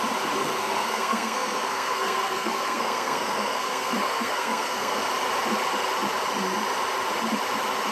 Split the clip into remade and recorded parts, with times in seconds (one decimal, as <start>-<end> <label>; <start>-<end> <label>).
0.0-0.4 recorded; 0.4-5.0 remade; 5.0-7.9 recorded